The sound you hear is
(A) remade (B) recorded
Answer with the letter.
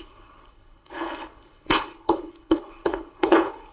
A